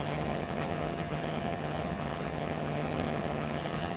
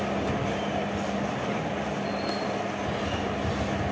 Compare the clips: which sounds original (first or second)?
second